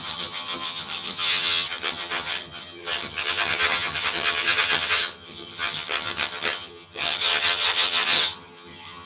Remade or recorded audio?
remade